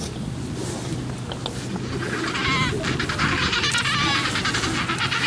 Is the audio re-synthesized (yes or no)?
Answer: no